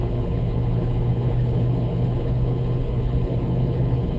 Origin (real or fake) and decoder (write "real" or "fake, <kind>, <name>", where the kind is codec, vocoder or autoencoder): fake, codec, HILCodec